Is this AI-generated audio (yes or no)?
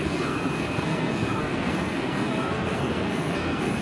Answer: yes